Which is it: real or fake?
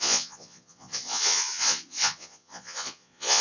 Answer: fake